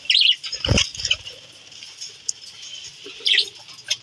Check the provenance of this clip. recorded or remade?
recorded